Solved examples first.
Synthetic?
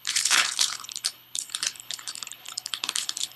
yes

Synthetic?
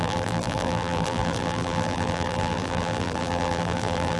yes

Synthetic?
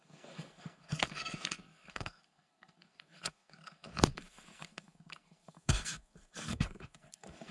yes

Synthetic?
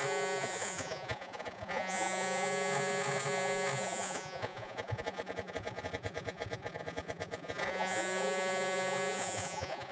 yes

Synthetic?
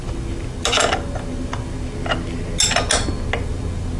no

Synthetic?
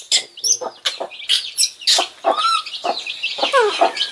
no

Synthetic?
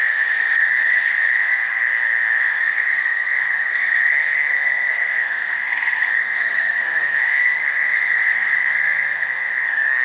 yes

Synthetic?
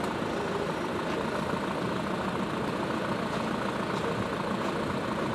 no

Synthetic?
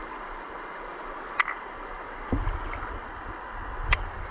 no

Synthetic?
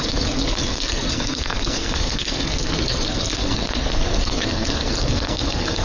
yes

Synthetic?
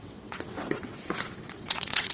yes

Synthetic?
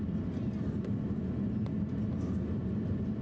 no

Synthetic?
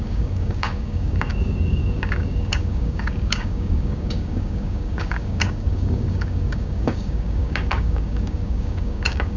yes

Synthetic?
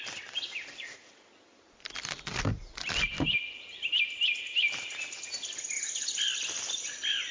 no